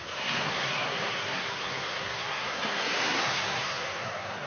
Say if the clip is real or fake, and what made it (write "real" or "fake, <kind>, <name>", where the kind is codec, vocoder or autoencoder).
fake, codec, SNAC